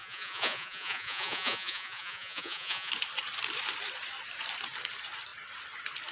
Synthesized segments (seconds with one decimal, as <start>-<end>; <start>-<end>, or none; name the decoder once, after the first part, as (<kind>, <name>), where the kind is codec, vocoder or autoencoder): 0.0-2.9 (vocoder, Vocos)